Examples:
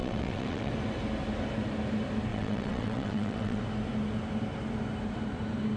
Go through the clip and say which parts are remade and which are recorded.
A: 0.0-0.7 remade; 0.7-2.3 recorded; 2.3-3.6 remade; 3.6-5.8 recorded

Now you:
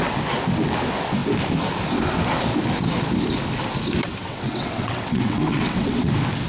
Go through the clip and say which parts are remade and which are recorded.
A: 0.0-4.2 recorded; 4.2-6.1 remade; 6.1-6.5 recorded

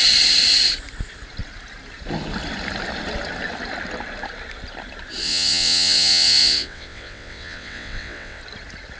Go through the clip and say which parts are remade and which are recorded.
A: 0.0-5.2 recorded; 5.2-8.4 remade; 8.4-9.0 recorded

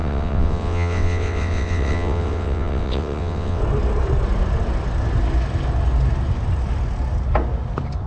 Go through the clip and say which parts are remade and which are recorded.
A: 0.0-3.6 remade; 3.6-8.1 recorded